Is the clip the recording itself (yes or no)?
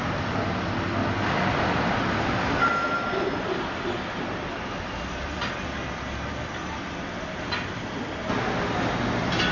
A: yes